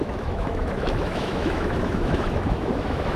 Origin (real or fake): fake